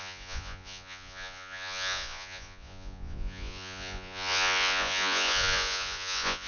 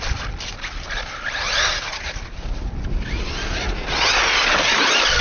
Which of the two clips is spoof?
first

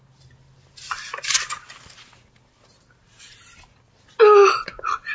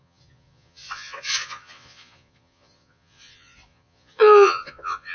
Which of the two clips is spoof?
second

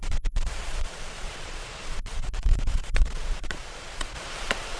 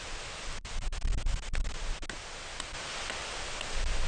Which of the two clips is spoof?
first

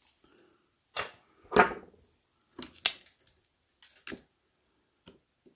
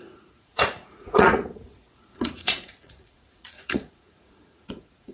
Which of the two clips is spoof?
second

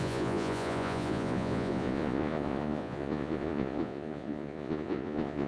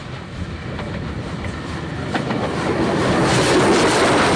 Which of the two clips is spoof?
first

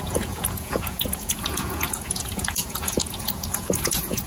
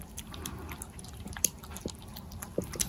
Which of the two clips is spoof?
first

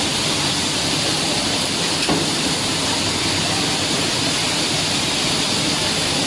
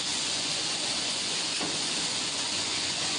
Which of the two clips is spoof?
second